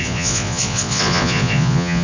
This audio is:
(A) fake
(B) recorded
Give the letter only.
A